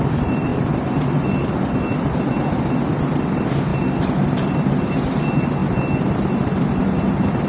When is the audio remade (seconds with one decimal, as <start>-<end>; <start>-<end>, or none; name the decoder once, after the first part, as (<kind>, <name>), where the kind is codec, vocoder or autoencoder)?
none